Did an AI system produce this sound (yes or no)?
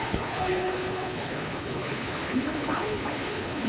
yes